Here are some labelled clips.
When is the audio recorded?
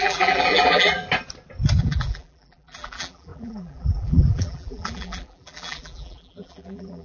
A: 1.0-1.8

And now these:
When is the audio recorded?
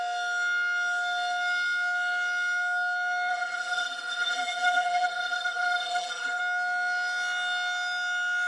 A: 0.0-3.3; 6.4-8.5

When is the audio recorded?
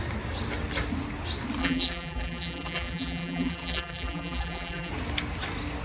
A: 0.0-1.6; 4.9-5.8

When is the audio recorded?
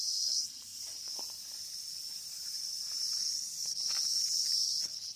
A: 0.0-2.1; 3.2-5.2